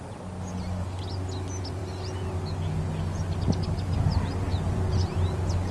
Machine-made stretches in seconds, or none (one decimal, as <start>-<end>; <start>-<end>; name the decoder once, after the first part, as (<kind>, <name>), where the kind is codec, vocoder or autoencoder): none